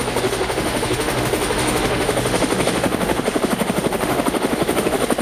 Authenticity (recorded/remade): remade